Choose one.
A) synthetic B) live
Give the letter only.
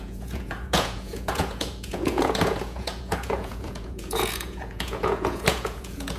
A